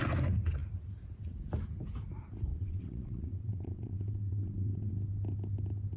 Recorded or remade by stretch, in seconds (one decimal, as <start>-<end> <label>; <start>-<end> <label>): 0.0-2.5 recorded; 2.5-4.9 remade; 4.9-6.0 recorded